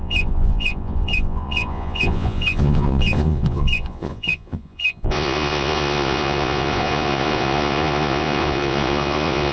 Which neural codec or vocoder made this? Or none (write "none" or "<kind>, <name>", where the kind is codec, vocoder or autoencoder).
vocoder, Vocos